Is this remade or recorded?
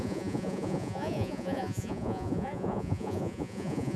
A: remade